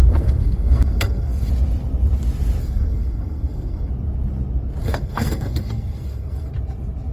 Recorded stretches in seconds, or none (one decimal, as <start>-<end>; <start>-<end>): 1.5-2.6; 3.9-4.8; 6.5-7.1